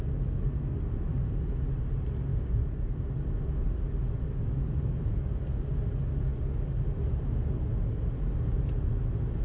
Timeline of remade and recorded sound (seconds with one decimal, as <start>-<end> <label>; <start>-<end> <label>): 0.0-9.4 recorded